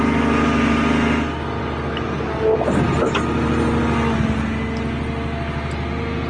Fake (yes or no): no